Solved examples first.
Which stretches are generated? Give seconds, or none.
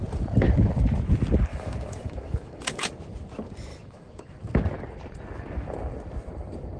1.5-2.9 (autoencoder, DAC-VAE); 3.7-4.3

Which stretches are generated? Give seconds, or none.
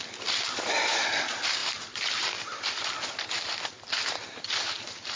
none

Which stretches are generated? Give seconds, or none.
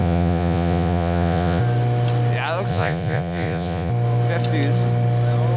0.0-1.6 (vocoder, Vocos); 2.7-3.9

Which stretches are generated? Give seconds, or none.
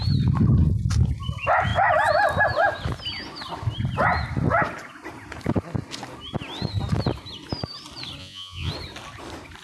8.2-8.7 (vocoder, Vocos)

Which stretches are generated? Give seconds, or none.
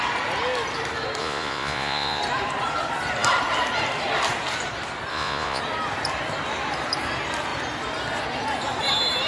1.2-2.2 (vocoder, Vocos); 5.1-5.6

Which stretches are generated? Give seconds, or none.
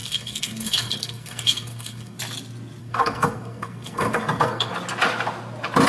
0.0-2.2 (codec, SNAC); 2.8-4.7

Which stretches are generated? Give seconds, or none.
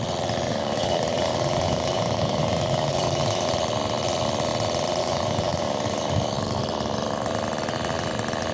0.5-3.5 (codec, DAC); 5.0-6.6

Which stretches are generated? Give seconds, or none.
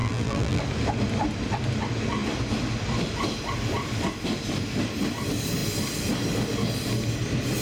0.0-0.6 (vocoder, BigVGAN v2)